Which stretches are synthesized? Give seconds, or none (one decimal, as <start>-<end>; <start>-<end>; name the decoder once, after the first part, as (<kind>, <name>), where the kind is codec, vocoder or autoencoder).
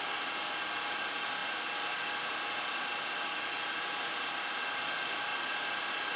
none